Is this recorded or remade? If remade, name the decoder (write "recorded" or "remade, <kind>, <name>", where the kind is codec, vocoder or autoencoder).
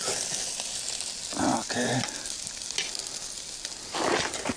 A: recorded